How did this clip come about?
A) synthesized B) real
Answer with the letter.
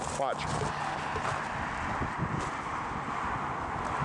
B